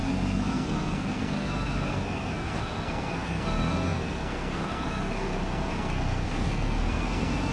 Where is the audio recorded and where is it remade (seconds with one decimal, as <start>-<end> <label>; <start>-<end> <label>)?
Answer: 0.0-7.5 remade